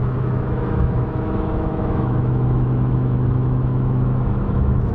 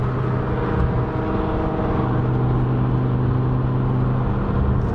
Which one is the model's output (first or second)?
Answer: first